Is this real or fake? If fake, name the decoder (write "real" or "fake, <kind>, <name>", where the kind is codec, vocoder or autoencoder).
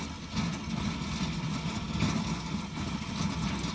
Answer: real